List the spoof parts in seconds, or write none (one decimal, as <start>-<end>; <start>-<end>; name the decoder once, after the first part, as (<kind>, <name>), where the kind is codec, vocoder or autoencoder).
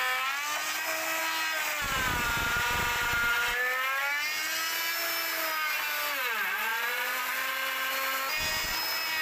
6.7-7.9 (vocoder, BigVGAN v2)